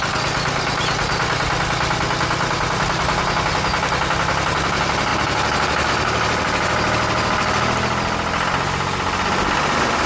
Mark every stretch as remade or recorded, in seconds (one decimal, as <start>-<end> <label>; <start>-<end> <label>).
0.0-10.1 recorded